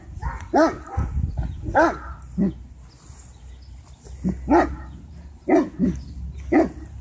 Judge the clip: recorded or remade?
recorded